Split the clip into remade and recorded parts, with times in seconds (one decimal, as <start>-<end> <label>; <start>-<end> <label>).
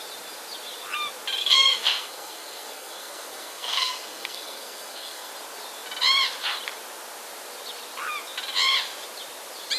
0.0-1.4 recorded; 1.4-5.3 remade; 5.3-9.8 recorded